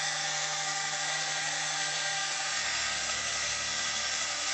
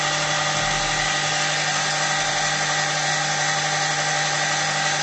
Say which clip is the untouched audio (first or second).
second